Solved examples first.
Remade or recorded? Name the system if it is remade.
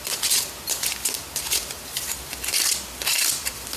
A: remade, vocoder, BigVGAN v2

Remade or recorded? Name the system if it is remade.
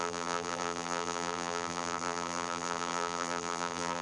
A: remade, vocoder, BigVGAN v2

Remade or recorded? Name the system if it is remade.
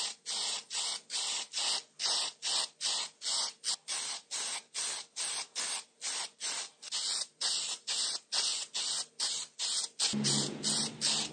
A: recorded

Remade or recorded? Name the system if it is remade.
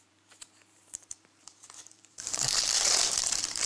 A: remade, vocoder, BigVGAN v2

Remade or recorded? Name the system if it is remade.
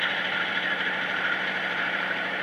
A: remade, vocoder, BigVGAN v2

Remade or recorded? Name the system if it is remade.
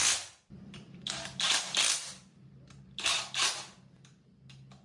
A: recorded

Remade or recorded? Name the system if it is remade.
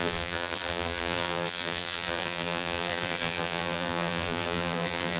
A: remade, vocoder, BigVGAN v2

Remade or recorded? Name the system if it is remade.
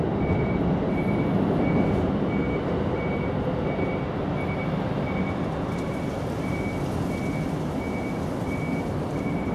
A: recorded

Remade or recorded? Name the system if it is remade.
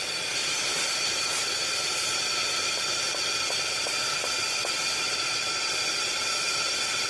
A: remade, vocoder, BigVGAN v2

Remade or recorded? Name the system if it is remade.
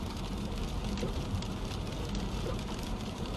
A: remade, vocoder, BigVGAN v2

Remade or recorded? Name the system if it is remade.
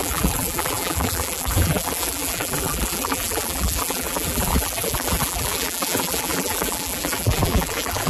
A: remade, vocoder, BigVGAN v2